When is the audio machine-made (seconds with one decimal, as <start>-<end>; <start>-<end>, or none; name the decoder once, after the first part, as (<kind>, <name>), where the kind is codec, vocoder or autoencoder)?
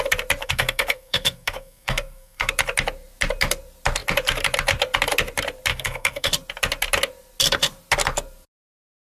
0.4-2.5 (codec, SNAC); 5.7-6.3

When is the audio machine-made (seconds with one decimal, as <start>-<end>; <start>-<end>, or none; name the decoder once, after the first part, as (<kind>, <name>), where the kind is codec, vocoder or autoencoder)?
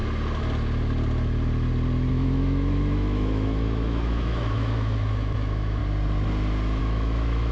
2.1-5.8 (autoencoder, DAC-VAE); 6.8-7.5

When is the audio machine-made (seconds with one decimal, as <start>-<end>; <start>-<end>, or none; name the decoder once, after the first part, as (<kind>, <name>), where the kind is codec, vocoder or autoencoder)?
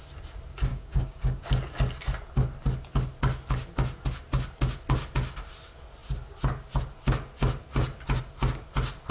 0.7-1.4 (codec, DAC)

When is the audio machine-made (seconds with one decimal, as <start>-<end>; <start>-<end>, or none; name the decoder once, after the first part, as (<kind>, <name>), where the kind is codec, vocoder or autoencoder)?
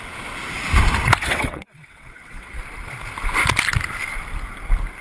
1.2-2.6 (vocoder, WaveNeXt)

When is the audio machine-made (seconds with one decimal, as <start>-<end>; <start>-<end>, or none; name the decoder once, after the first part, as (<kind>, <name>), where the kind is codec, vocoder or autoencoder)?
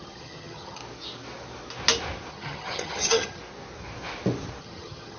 0.0-0.8 (vocoder, HiFi-GAN); 2.3-3.4; 4.6-5.2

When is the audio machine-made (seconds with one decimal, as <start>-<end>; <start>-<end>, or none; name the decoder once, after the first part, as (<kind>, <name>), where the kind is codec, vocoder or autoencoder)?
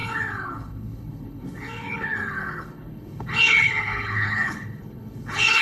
0.0-5.6 (codec, HILCodec)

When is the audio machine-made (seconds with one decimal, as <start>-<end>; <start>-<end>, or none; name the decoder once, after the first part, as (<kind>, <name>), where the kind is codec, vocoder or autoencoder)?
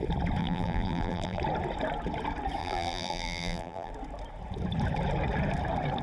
0.4-1.4 (vocoder, BigVGAN v2); 2.6-3.9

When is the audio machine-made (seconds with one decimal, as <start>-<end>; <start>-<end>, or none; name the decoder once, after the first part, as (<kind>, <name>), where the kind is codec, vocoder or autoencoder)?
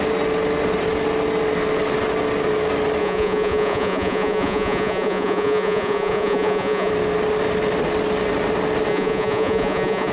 3.0-6.9 (vocoder, Vocos); 8.9-10.1